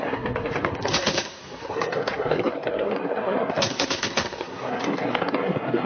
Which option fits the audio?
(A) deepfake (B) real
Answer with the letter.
A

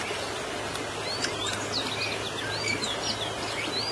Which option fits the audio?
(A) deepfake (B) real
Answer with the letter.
B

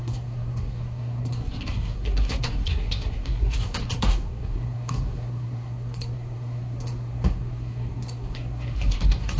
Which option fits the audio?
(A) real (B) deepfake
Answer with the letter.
B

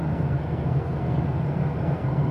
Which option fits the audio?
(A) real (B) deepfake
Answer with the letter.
B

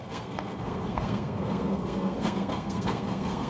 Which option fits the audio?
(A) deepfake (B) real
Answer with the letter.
A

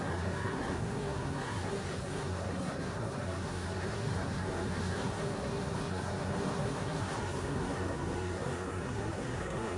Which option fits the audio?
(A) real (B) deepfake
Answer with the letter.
B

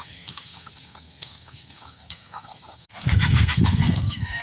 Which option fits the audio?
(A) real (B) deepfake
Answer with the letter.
B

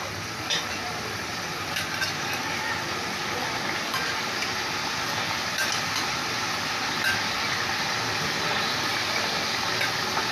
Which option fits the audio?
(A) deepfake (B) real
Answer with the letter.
B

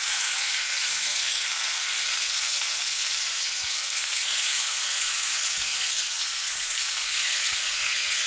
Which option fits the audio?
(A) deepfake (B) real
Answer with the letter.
A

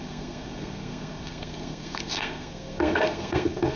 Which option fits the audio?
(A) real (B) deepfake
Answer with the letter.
B